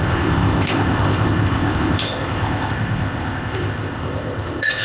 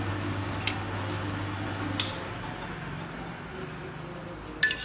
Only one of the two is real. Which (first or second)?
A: second